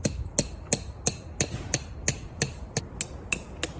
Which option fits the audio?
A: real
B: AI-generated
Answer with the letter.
A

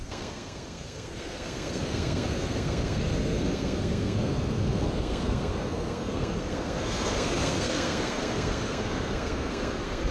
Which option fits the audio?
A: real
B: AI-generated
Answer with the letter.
B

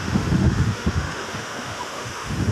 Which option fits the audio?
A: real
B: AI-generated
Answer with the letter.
B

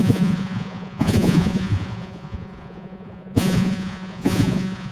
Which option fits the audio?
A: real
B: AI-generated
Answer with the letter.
B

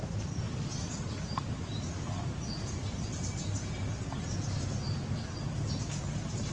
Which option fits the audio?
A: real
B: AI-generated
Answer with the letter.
A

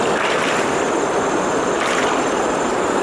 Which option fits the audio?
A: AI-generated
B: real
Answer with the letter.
B